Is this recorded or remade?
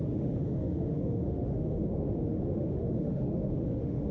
remade